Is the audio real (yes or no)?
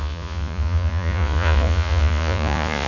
no